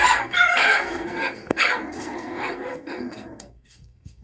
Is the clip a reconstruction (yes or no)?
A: yes